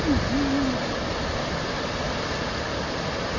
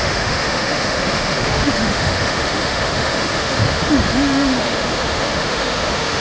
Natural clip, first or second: first